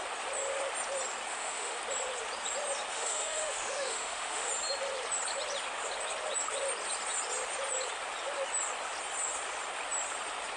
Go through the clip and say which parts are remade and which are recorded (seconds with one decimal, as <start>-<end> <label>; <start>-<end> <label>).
0.0-1.3 recorded; 1.3-1.8 remade; 1.8-2.9 recorded; 2.9-4.5 remade; 4.5-10.6 recorded